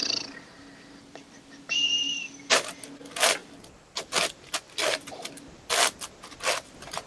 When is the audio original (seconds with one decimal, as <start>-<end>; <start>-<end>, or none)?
2.3-3.4